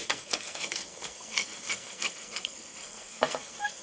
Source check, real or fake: fake